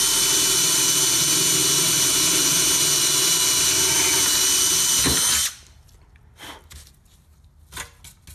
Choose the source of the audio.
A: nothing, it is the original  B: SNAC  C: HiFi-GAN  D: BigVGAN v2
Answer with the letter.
A